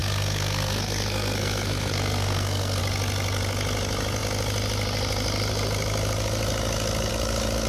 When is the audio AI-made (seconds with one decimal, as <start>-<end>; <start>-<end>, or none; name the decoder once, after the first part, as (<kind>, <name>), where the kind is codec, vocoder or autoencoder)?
0.0-2.8 (codec, SNAC)